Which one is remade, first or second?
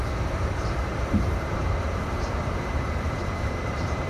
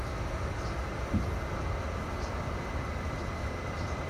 first